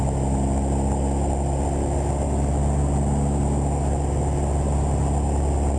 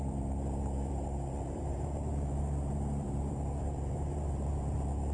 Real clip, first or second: first